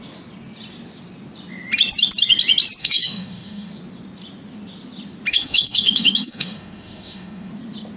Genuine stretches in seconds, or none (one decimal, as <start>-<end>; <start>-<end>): 0.0-2.8; 3.7-5.3; 7.5-8.0